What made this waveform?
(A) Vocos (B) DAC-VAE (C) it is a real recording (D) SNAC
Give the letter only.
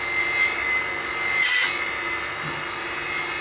C